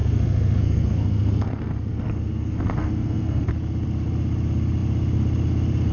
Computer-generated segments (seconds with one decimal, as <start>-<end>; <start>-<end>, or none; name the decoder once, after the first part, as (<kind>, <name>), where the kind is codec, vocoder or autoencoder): 0.0-3.5 (codec, SNAC)